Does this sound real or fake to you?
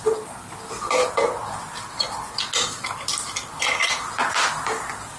real